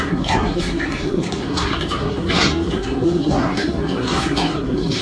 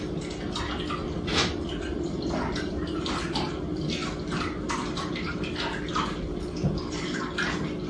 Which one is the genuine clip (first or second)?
second